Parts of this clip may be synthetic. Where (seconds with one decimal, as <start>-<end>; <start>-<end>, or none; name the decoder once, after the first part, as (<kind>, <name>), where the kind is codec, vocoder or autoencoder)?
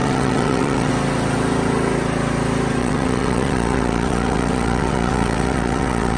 0.0-0.9 (vocoder, WaveNeXt); 2.8-6.2